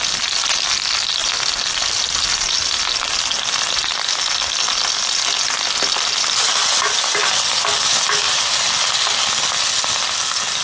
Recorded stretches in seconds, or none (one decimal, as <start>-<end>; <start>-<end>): 0.0-10.6